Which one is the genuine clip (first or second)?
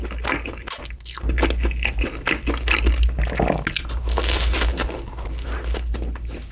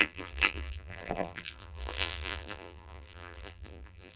first